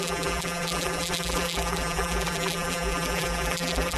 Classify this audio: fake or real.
fake